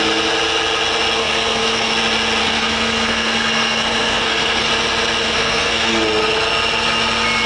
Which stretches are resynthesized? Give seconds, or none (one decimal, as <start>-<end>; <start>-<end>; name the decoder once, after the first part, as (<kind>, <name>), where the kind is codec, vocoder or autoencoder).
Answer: 1.2-1.9 (codec, SNAC); 2.4-4.7; 5.2-5.9